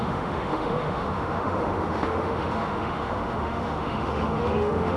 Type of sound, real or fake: fake